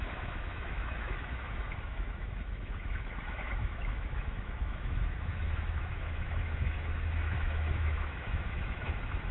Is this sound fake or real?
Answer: fake